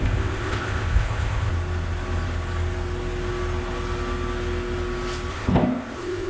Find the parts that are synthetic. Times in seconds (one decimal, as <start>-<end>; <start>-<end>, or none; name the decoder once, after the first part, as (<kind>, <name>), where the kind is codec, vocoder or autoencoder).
0.0-1.5 (codec, ZipCodec); 5.3-6.3